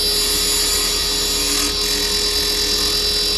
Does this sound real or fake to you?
real